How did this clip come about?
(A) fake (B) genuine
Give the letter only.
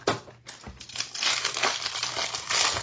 B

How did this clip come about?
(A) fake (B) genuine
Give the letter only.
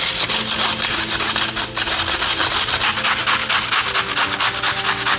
B